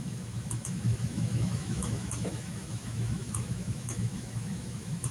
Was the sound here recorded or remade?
remade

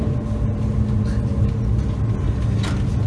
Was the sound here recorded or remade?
recorded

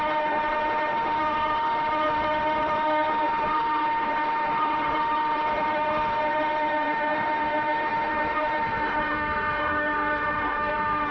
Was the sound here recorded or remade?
remade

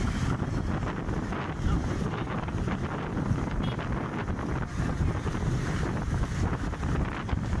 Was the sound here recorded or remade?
recorded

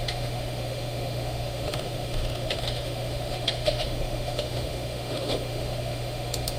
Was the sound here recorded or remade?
remade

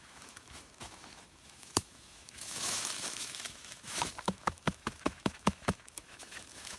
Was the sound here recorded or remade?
remade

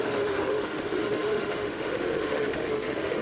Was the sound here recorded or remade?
remade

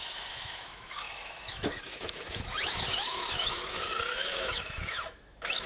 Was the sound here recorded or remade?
remade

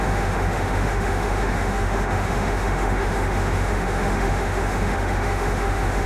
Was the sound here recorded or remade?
remade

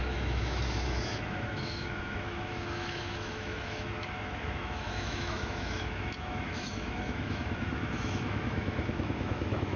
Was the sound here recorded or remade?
remade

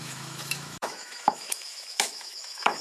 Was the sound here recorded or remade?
remade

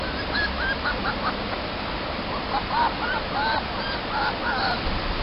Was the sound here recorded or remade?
recorded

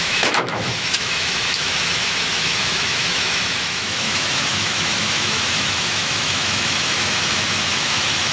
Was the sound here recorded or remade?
remade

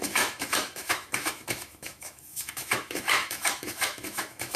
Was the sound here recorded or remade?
remade